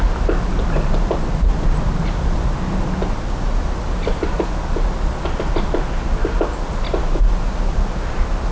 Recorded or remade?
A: recorded